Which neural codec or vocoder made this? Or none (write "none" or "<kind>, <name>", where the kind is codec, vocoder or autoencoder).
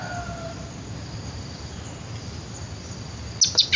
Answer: none